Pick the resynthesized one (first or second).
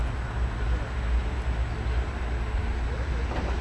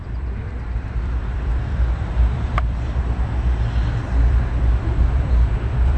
second